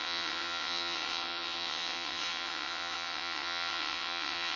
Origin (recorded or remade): remade